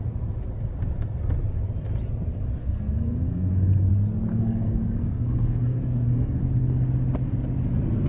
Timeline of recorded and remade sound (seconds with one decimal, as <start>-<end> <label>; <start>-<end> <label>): 0.0-2.6 recorded; 2.6-3.9 remade; 3.9-4.3 recorded; 4.3-6.4 remade; 6.4-8.1 recorded